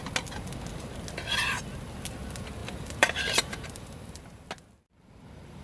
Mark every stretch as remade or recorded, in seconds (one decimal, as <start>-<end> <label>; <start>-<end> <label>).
0.0-2.6 recorded; 2.6-4.2 remade; 4.2-5.6 recorded